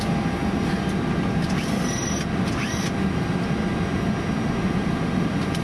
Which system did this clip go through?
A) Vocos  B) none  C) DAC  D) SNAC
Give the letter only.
B